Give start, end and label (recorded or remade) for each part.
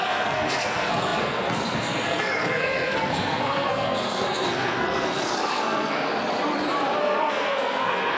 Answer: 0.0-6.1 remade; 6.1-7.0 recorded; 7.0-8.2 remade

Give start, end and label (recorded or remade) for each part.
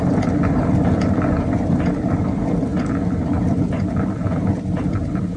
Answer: 0.0-2.7 remade; 2.7-3.7 recorded; 3.7-5.4 remade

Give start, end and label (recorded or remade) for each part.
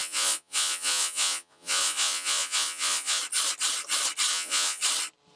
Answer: 0.0-3.2 remade; 3.2-4.3 recorded; 4.3-4.8 remade; 4.8-5.4 recorded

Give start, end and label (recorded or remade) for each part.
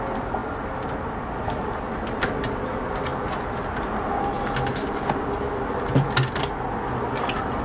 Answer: 0.0-7.6 recorded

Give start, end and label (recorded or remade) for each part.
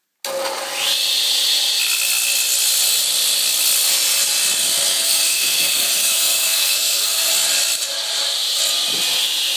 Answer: 0.0-4.9 recorded; 4.9-7.3 remade; 7.3-9.6 recorded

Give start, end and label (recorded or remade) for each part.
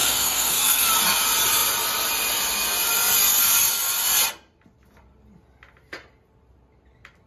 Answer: 0.0-0.9 remade; 0.9-7.3 recorded